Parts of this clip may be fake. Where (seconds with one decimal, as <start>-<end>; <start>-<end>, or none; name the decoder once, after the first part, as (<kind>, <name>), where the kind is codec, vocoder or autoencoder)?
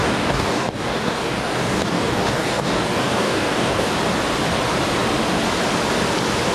0.0-3.9 (codec, DAC)